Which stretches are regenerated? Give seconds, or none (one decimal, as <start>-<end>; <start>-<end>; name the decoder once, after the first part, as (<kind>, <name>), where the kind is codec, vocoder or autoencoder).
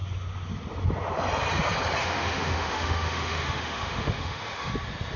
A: 2.0-4.7 (autoencoder, DAC-VAE)